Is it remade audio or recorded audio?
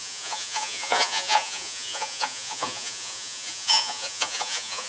remade